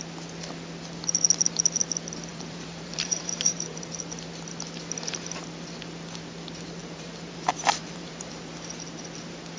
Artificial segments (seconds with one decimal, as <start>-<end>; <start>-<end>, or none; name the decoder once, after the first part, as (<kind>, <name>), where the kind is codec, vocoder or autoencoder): 2.3-3.9 (vocoder, BigVGAN v2); 6.8-8.5